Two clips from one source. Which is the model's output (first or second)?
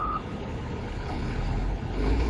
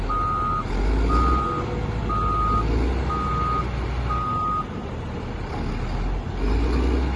first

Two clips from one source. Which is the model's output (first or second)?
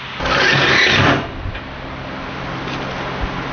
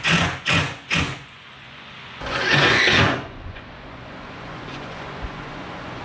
second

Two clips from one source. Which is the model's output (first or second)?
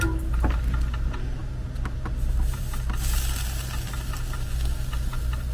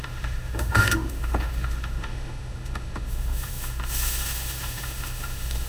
second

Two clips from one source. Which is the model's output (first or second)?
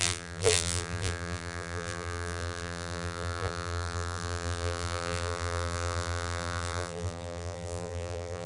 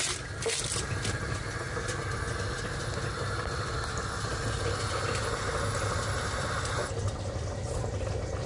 first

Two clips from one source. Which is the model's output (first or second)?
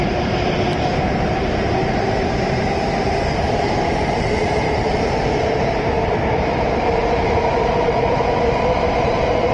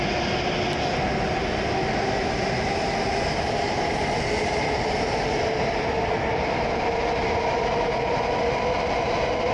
first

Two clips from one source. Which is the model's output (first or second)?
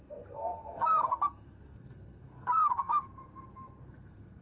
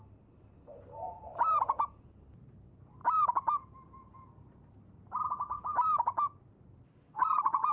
first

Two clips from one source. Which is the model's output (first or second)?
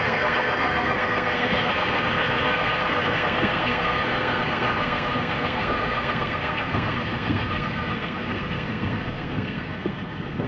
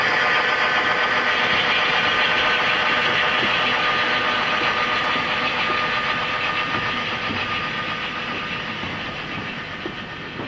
first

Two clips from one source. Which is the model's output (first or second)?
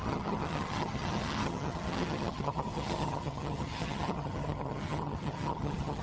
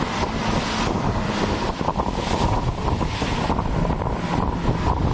first